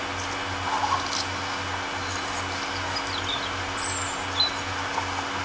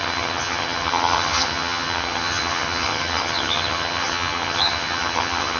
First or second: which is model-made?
second